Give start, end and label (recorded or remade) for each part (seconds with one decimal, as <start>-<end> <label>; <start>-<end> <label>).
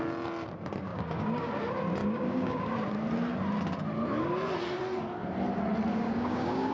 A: 0.0-0.9 recorded; 0.9-1.5 remade; 1.5-2.0 recorded; 2.0-2.7 remade; 2.7-5.9 recorded; 5.9-6.7 remade